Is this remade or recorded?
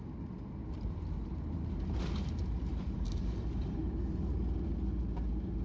recorded